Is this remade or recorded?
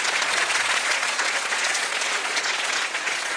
remade